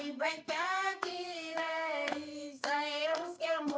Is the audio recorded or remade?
remade